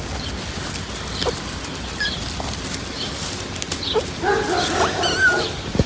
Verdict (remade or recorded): recorded